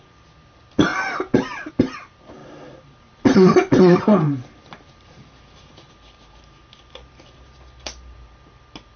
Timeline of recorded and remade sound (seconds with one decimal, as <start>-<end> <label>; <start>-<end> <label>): 0.0-0.9 recorded; 0.9-1.7 remade; 1.7-2.4 recorded; 2.4-5.9 remade; 5.9-9.0 recorded